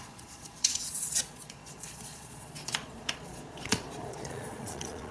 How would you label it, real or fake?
fake